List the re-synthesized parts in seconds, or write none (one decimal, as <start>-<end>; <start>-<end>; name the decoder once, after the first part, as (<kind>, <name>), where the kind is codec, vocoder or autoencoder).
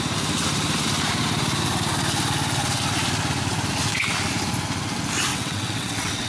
5.3-6.3 (vocoder, WaveNeXt)